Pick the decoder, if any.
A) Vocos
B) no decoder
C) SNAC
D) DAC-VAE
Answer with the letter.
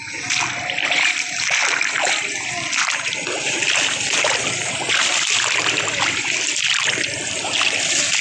B